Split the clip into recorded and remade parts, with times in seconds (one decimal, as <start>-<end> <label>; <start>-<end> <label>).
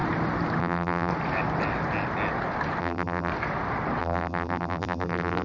0.0-0.6 recorded; 0.6-1.1 remade; 1.1-2.8 recorded; 2.8-3.3 remade; 3.3-4.0 recorded; 4.0-5.4 remade